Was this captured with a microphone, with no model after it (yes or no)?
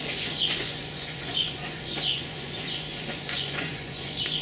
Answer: no